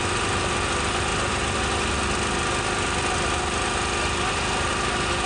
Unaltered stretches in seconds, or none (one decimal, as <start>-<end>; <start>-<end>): 0.0-5.3